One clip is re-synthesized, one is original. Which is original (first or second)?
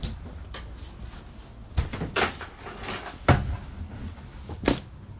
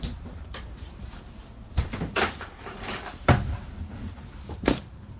first